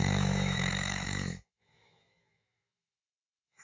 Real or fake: fake